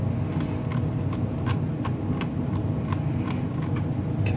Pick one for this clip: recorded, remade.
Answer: recorded